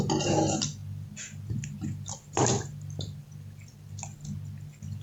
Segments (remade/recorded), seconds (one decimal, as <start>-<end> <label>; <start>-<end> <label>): 0.0-5.0 recorded